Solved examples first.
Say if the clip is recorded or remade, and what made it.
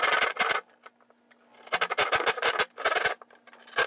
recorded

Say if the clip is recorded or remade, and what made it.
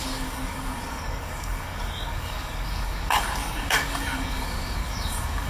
remade, codec, DAC